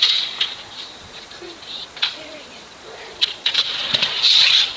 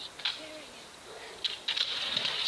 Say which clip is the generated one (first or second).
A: first